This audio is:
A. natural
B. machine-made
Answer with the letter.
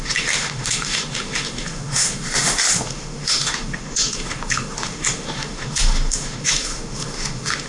B